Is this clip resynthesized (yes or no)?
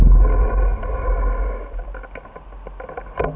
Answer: no